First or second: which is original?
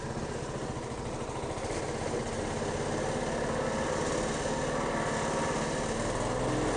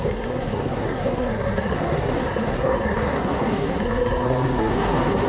first